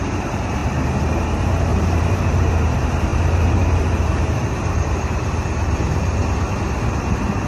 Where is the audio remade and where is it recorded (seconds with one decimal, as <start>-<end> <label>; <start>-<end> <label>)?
0.0-0.6 remade; 0.6-1.2 recorded; 1.2-6.2 remade; 6.2-7.5 recorded

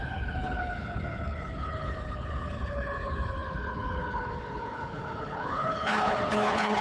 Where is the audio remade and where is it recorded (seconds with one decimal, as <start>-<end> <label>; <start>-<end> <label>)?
0.0-6.8 remade

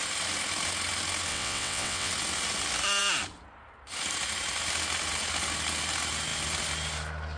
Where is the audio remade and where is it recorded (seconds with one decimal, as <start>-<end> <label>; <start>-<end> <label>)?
0.0-1.3 recorded; 1.3-2.1 remade; 2.1-7.4 recorded

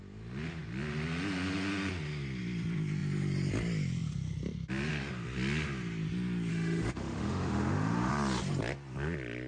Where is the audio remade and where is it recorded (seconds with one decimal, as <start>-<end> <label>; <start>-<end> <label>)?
0.0-6.5 recorded; 6.5-8.1 remade; 8.1-9.5 recorded

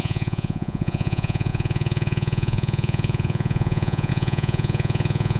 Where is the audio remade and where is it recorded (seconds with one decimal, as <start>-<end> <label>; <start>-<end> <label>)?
0.0-5.4 remade

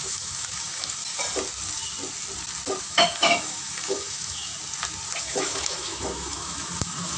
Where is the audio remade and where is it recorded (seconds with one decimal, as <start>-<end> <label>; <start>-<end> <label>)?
0.0-1.0 remade; 1.0-2.8 recorded; 2.8-4.5 remade; 4.5-5.2 recorded; 5.2-7.2 remade